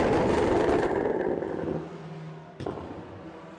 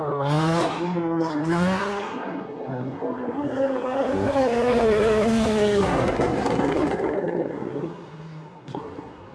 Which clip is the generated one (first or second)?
second